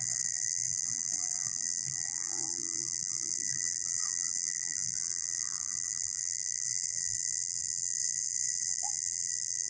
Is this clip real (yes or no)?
no